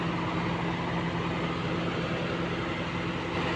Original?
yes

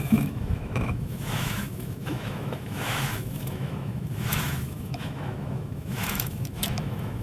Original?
no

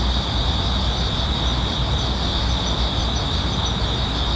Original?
yes